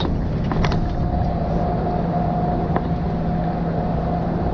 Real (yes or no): yes